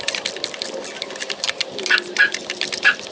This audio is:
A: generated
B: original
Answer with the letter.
B